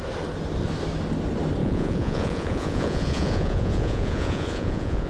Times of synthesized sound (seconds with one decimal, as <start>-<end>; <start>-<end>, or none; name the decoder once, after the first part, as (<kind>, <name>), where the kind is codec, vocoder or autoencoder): 1.6-5.1 (vocoder, Vocos)